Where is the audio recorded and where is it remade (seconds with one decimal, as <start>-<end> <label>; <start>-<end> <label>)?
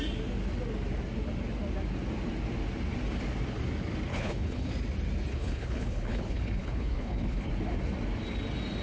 0.0-4.1 recorded; 4.1-4.7 remade; 4.7-5.3 recorded; 5.3-7.5 remade; 7.5-8.8 recorded